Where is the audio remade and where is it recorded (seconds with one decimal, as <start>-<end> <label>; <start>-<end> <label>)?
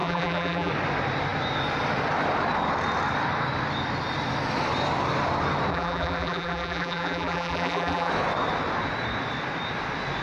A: 0.0-0.7 remade; 0.7-5.7 recorded; 5.7-8.1 remade; 8.1-10.2 recorded